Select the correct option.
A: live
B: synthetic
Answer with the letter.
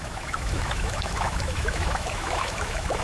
B